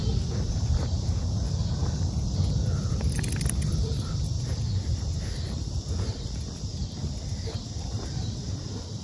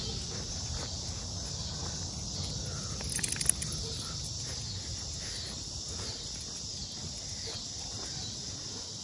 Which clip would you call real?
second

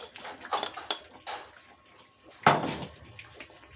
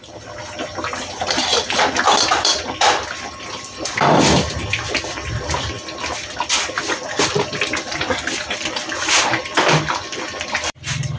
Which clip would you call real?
first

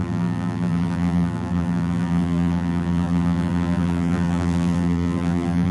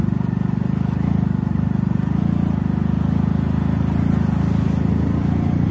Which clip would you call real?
second